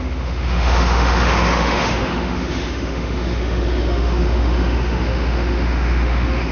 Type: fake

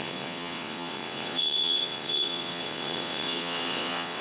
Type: fake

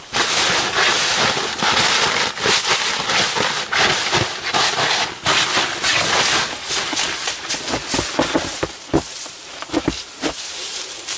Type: real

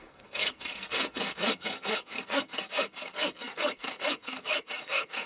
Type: fake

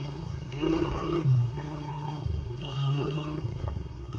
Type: fake